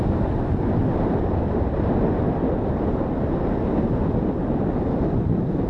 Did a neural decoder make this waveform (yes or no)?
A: no